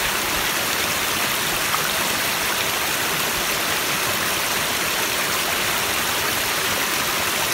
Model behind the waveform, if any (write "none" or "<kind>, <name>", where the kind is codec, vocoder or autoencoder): none